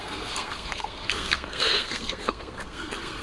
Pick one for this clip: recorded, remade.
remade